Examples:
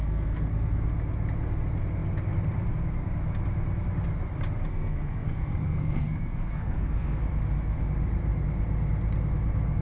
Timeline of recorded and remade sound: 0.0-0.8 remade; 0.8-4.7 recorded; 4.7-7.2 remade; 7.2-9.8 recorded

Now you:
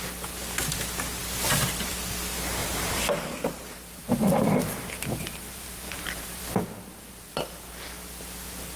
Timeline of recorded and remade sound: 0.0-2.6 recorded; 2.6-6.4 remade; 6.4-6.9 recorded; 6.9-7.7 remade; 7.7-8.8 recorded

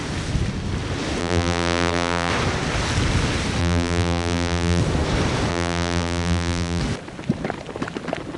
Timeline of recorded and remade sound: 0.0-1.2 recorded; 1.2-2.3 remade; 2.3-3.6 recorded; 3.6-4.8 remade; 4.8-5.5 recorded; 5.5-6.8 remade; 6.8-8.4 recorded

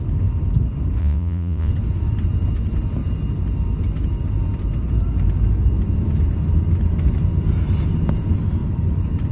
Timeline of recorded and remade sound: 0.0-1.0 recorded; 1.0-1.7 remade; 1.7-9.3 recorded

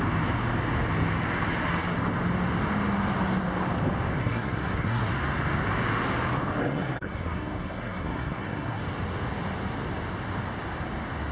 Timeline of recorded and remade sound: 0.0-4.2 recorded; 4.2-5.1 remade; 5.1-6.6 recorded; 6.6-8.8 remade; 8.8-11.3 recorded

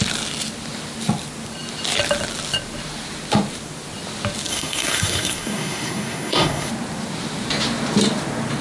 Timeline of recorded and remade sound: 0.0-4.5 recorded; 4.5-6.7 remade; 6.7-8.6 recorded

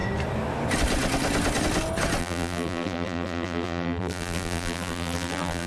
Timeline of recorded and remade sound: 0.0-2.2 recorded; 2.2-5.7 remade